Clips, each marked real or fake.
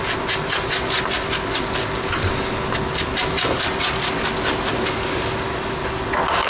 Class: real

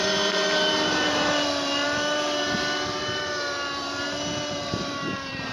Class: fake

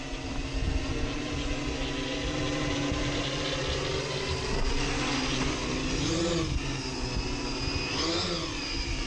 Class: real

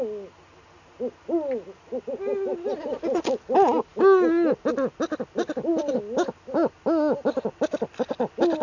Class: real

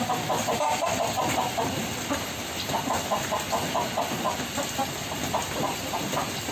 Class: real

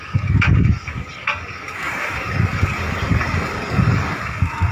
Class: fake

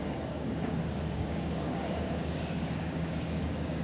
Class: fake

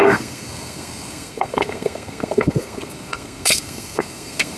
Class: fake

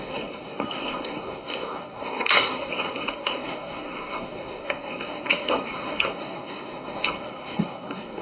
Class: fake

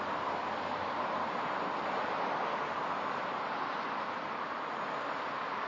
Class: real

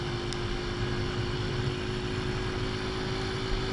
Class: real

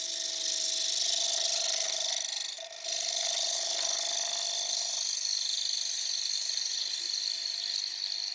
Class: real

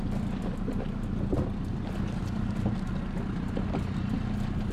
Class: real